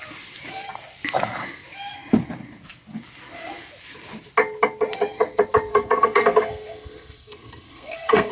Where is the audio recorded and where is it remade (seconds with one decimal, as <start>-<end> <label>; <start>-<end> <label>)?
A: 0.0-5.7 recorded; 5.7-8.3 remade